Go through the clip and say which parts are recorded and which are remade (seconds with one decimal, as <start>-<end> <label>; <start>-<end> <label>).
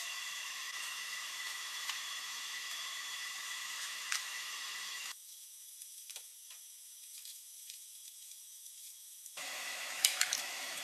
0.0-10.8 remade